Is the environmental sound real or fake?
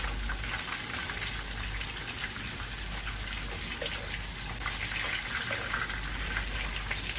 real